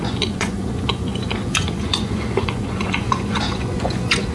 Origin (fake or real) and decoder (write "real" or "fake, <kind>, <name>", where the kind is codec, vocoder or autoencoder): fake, vocoder, Vocos